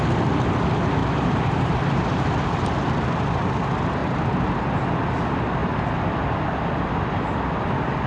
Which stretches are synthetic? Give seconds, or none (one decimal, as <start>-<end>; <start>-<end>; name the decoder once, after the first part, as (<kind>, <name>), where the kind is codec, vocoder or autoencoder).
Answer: 1.0-2.5 (vocoder, BigVGAN v2); 4.0-4.6